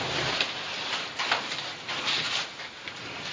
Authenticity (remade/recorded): recorded